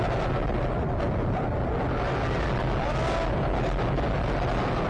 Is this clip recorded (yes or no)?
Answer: yes